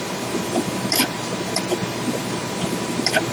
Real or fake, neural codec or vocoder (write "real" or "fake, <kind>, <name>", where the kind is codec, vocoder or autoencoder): fake, vocoder, BigVGAN v2